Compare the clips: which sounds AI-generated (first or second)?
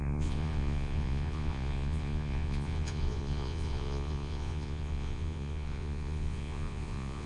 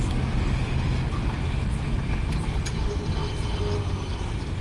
first